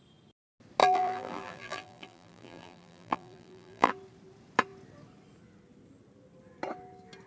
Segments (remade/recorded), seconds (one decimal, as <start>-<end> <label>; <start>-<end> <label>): 0.0-0.8 recorded; 0.8-3.9 remade; 3.9-7.3 recorded